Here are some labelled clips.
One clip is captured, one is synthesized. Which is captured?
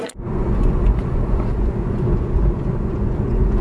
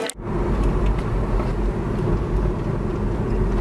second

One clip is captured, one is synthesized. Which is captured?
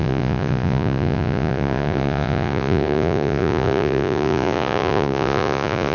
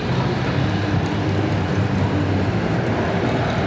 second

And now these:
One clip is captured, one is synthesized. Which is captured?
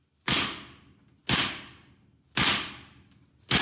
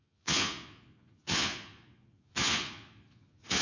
first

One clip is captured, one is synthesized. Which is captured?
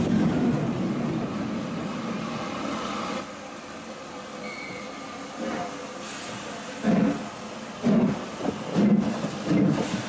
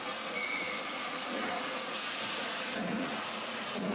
first